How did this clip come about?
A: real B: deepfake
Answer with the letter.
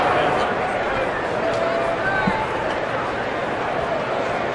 A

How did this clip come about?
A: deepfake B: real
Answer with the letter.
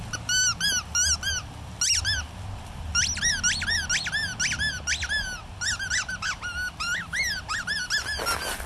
B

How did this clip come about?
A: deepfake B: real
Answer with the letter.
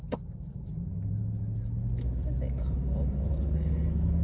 B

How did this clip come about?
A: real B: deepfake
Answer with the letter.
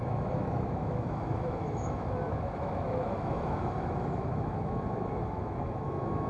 B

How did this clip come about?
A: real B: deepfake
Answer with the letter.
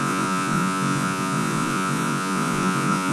B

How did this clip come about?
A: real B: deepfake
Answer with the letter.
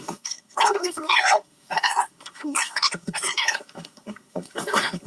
B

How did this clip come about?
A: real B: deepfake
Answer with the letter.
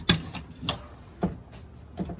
A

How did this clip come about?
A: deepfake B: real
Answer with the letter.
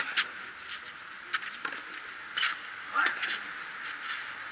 B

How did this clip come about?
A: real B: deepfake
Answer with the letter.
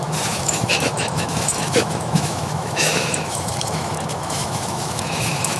B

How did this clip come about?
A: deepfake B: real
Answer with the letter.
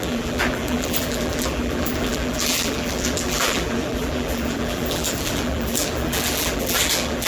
A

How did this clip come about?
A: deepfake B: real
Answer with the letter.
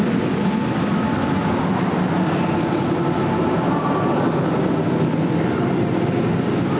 B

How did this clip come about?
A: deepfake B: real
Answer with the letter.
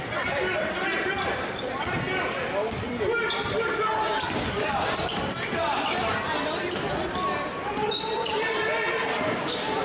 A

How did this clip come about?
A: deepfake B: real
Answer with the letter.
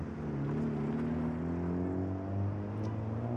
B